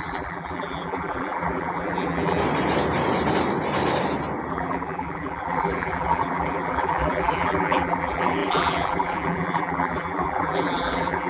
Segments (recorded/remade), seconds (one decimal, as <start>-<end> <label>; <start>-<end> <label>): 0.0-2.4 remade; 2.4-4.5 recorded; 4.5-11.3 remade